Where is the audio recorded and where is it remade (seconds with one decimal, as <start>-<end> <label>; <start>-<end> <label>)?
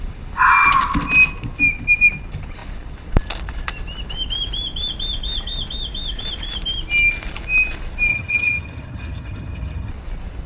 0.0-8.1 recorded; 8.1-9.9 remade; 9.9-10.5 recorded